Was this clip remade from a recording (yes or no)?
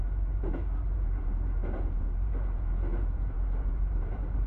yes